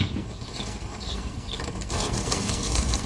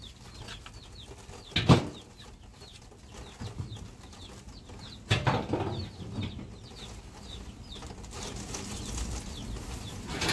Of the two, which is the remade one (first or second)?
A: first